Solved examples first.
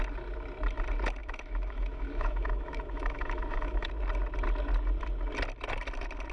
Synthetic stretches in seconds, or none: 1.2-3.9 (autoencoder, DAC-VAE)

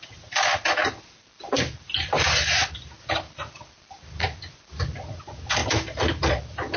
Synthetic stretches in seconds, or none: none